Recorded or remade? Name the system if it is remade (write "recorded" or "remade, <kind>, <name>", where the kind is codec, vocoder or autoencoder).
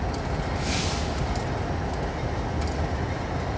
recorded